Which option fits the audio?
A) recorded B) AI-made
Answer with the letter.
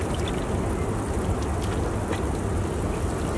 A